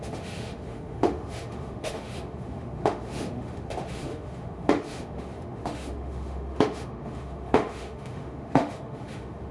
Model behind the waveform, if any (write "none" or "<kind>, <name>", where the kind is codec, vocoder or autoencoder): autoencoder, DAC-VAE